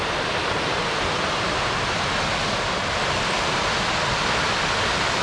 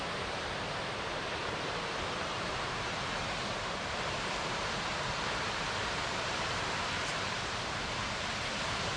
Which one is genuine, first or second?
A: first